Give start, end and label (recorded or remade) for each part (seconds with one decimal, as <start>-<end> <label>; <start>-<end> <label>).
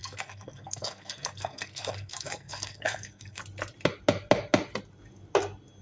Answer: 0.0-3.4 remade; 3.4-5.8 recorded